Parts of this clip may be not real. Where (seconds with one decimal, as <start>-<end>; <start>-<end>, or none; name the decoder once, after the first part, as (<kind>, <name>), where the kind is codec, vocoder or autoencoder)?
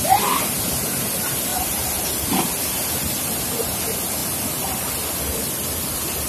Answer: 1.5-2.5 (vocoder, BigVGAN v2); 4.2-5.2